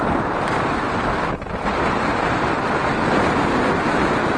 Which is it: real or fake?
real